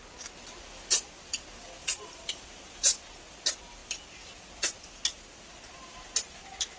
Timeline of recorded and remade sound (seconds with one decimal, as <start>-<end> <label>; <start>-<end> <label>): 0.0-1.8 recorded; 1.8-2.5 remade; 2.5-6.8 recorded